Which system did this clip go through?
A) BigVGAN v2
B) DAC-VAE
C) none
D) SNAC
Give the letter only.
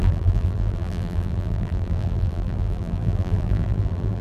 A